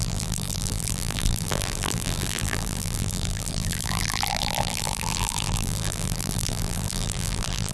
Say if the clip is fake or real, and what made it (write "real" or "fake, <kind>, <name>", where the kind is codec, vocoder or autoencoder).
fake, vocoder, BigVGAN v2